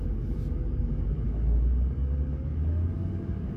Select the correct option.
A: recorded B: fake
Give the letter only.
B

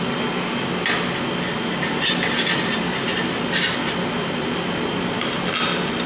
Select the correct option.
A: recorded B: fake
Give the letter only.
A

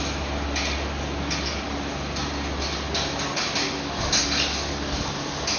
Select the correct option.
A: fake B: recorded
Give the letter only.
B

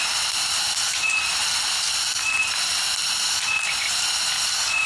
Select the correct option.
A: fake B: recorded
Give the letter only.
B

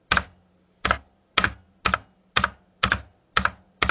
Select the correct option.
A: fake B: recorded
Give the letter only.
B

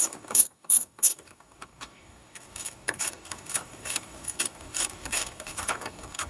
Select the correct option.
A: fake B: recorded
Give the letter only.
A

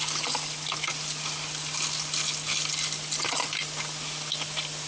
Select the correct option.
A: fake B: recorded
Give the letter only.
B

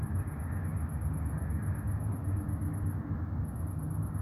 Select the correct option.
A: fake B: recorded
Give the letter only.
B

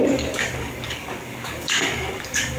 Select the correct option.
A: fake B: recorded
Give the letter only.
A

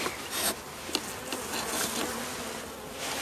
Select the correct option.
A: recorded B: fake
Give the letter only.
A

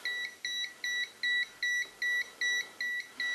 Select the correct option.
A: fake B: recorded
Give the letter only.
B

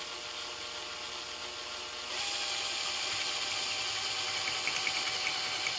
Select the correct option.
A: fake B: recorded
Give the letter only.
B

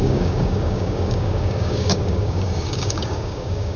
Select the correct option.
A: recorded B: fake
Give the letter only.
B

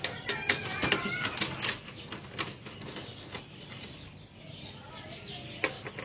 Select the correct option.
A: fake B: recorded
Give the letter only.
B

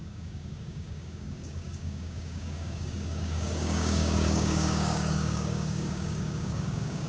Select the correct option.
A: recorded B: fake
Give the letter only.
B